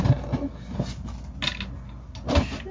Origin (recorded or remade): recorded